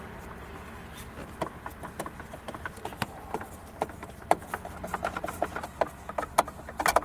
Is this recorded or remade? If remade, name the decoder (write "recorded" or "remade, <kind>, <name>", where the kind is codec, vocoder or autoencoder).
recorded